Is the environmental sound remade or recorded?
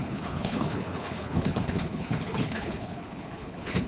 remade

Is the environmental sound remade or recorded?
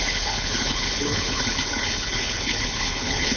remade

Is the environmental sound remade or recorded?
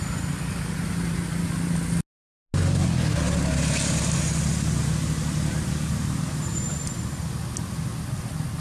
recorded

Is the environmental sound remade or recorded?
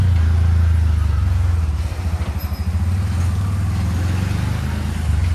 recorded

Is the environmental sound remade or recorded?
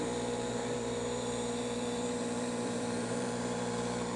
remade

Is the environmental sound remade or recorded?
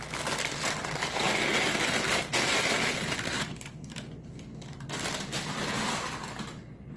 recorded